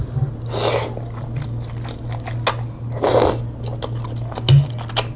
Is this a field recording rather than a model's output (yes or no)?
yes